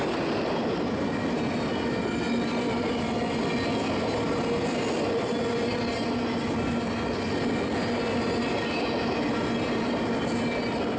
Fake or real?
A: real